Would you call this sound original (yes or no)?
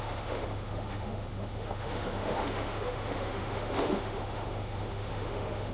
no